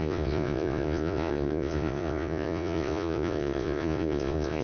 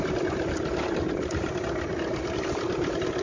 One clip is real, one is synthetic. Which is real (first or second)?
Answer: second